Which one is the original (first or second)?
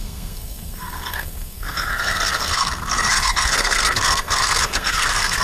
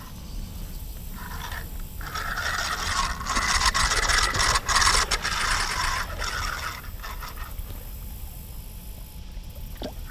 second